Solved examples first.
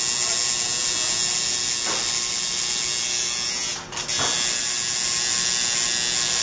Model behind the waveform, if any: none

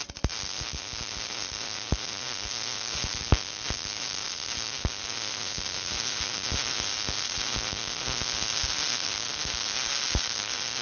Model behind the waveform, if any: none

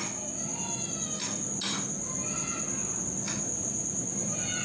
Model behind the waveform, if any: none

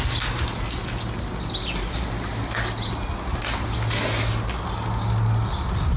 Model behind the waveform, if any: none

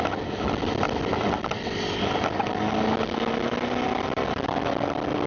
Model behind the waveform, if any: none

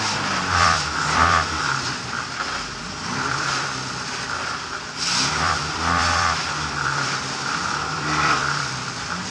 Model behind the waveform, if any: vocoder, BigVGAN v2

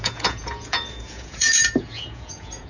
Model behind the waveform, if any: vocoder, Vocos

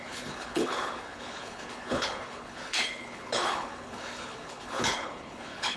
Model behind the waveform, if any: codec, HILCodec